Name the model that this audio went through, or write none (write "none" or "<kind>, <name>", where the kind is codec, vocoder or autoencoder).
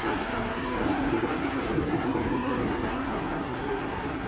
codec, SNAC